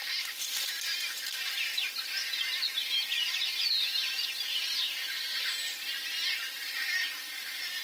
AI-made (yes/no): yes